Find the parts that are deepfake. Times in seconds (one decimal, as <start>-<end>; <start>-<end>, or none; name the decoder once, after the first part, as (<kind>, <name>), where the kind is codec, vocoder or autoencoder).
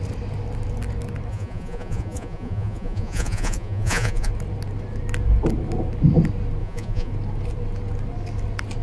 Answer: 1.3-4.3 (vocoder, Vocos); 6.6-7.1